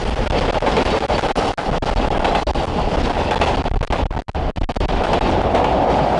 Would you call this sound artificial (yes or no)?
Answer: no